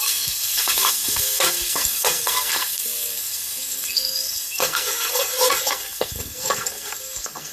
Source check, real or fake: fake